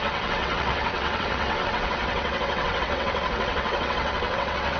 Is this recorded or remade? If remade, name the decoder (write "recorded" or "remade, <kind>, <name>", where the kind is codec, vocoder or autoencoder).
remade, vocoder, WaveNeXt